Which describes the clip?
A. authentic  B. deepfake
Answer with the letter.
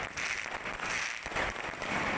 A